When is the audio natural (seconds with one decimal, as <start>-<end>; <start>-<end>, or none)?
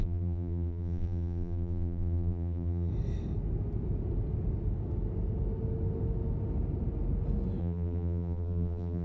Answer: 2.9-7.6